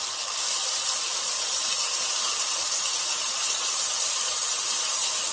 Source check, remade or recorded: recorded